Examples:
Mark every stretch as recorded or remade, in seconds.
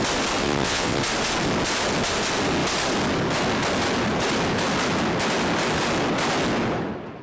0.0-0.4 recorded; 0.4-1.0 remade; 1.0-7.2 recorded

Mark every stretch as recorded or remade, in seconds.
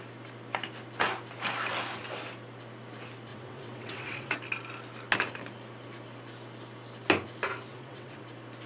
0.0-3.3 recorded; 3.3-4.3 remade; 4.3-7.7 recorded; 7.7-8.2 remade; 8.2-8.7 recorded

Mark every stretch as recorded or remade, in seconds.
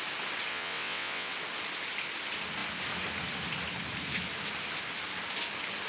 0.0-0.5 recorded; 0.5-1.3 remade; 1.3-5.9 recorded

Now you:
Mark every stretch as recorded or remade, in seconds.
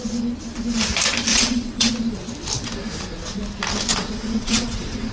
0.0-1.3 recorded; 1.3-1.9 remade; 1.9-3.9 recorded; 3.9-5.1 remade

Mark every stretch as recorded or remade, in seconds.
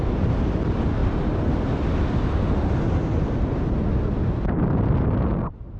0.0-5.8 recorded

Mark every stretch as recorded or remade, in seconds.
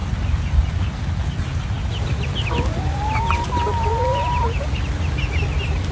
0.0-5.9 recorded